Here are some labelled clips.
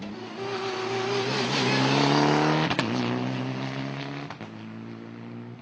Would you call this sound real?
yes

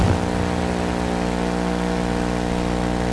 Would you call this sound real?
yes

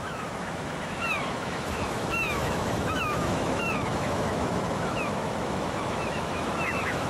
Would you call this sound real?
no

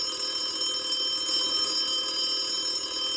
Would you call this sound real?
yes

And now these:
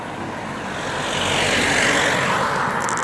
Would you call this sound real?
yes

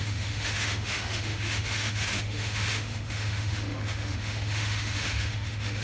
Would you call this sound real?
no